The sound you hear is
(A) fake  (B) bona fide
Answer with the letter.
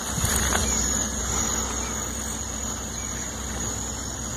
B